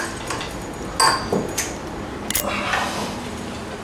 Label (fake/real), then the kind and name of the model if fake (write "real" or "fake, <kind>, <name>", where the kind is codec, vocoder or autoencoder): real